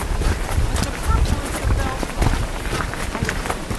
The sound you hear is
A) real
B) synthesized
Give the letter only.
B